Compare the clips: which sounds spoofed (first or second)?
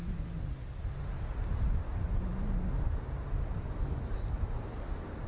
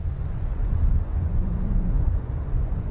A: second